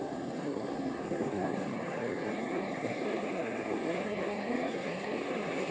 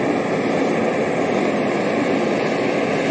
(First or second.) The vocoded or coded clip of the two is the first